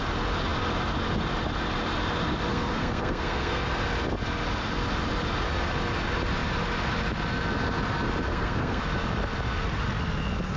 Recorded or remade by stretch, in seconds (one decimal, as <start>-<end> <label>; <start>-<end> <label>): 0.0-2.5 recorded; 2.5-3.6 remade; 3.6-8.3 recorded; 8.3-8.8 remade; 8.8-10.6 recorded